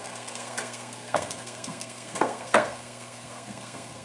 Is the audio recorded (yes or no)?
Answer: no